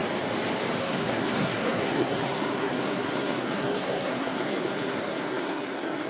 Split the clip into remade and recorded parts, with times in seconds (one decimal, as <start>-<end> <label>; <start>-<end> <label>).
0.0-0.8 recorded; 0.8-6.1 remade